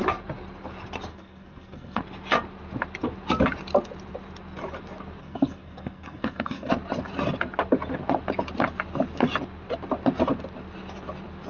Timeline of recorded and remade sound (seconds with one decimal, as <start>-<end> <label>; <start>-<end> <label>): 0.0-1.1 recorded; 1.1-2.0 remade; 2.0-5.2 recorded; 5.2-6.7 remade; 6.7-11.5 recorded

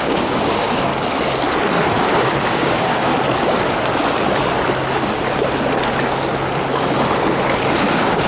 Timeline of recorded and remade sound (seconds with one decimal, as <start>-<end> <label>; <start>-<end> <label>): 0.0-0.9 remade; 0.9-2.1 recorded; 2.1-3.1 remade; 3.1-7.9 recorded; 7.9-8.3 remade